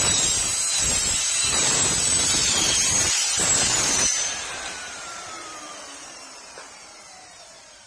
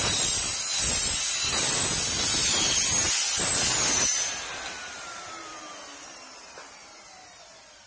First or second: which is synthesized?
first